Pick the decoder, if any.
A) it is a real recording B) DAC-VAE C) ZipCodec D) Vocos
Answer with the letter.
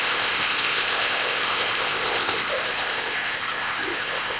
C